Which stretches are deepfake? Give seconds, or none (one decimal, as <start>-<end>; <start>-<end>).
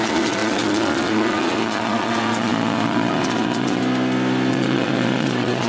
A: 0.0-3.8; 4.5-5.7